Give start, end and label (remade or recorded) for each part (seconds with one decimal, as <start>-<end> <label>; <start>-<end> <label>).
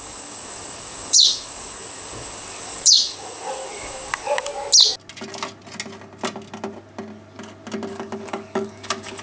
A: 0.0-4.5 remade; 4.5-7.9 recorded; 7.9-9.2 remade